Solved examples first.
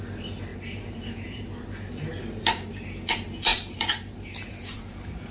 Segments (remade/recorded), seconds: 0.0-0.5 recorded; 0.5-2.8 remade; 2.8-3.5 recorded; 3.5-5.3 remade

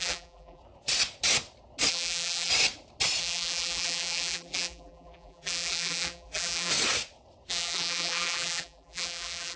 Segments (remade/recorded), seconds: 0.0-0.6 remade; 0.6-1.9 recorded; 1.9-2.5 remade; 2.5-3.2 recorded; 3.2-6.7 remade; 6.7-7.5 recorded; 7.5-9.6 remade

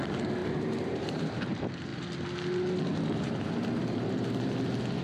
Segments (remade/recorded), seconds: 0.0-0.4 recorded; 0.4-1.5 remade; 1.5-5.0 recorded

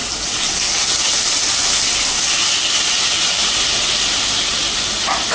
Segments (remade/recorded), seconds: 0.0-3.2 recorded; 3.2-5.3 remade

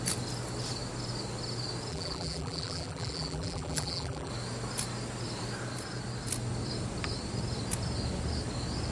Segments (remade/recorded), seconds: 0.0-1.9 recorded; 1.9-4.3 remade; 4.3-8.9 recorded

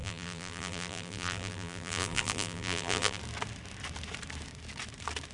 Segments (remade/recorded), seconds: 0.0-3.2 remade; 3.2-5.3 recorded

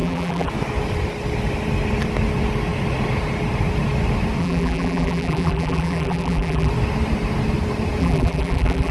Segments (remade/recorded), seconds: 0.0-0.5 remade; 0.5-4.4 recorded; 4.4-6.7 remade; 6.7-8.0 recorded; 8.0-8.9 remade

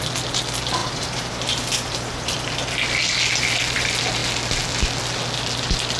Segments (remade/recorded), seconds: 0.0-0.8 recorded; 0.8-2.5 remade; 2.5-6.0 recorded